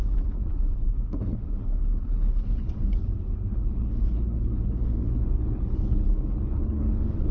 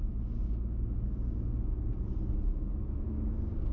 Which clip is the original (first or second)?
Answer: second